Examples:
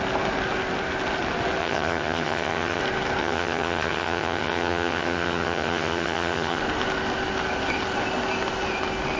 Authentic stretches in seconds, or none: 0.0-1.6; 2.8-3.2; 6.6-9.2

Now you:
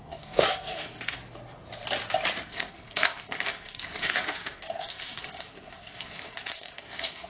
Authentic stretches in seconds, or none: 1.2-2.4

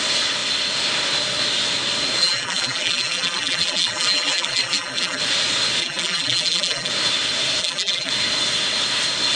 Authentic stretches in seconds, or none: 0.0-2.2; 5.2-5.8; 6.9-7.6; 8.1-9.4

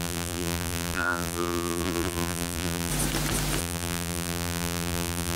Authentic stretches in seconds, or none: 2.9-3.6